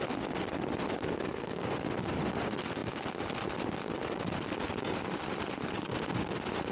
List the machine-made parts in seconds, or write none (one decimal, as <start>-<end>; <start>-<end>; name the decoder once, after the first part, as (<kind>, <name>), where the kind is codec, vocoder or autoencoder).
0.0-1.3 (vocoder, BigVGAN v2); 2.4-2.8; 5.3-6.7